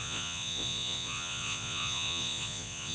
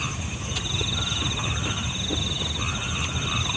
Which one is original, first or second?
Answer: second